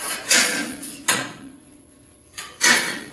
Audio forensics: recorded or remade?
remade